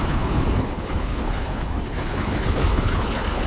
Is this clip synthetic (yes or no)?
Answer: yes